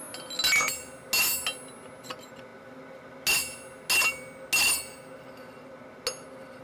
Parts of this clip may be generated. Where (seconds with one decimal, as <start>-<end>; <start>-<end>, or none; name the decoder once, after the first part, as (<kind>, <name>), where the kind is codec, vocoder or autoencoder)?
none